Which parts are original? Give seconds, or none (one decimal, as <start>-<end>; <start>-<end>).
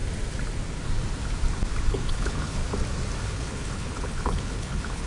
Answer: 0.0-1.9; 2.6-3.2